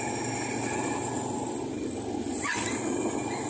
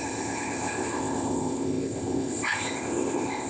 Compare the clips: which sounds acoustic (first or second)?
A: first